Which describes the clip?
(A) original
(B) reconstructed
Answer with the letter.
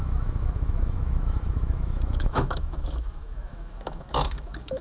B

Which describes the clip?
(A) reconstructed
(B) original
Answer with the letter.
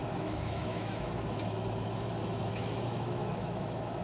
A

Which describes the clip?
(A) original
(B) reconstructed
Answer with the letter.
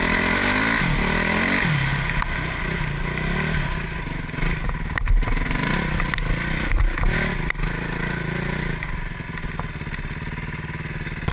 A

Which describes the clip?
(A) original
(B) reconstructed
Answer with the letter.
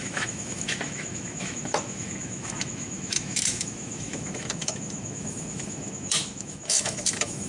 B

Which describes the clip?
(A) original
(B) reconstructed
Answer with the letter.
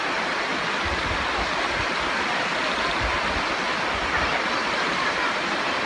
A